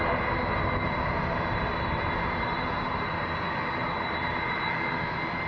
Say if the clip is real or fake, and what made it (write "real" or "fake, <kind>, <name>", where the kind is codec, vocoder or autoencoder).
real